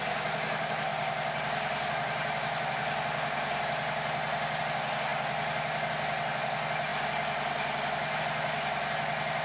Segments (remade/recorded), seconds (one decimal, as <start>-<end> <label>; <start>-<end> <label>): 0.0-9.4 recorded

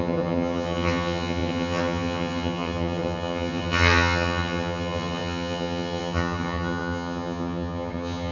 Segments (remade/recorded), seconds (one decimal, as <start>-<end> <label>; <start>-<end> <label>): 0.0-8.3 remade